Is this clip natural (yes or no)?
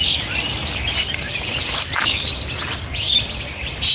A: yes